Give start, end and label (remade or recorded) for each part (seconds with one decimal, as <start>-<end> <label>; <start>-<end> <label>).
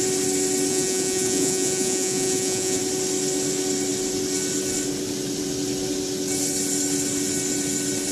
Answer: 0.0-0.7 recorded; 0.7-2.8 remade; 2.8-8.1 recorded